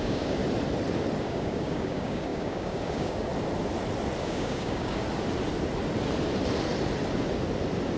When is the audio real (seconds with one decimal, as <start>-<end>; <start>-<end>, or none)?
0.4-1.2; 3.3-4.2; 5.0-8.0